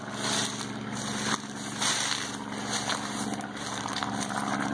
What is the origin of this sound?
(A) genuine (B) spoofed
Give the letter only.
A